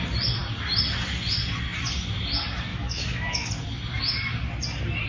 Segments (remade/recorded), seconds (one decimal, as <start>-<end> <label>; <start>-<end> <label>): 0.0-2.7 recorded; 2.7-3.5 remade; 3.5-5.1 recorded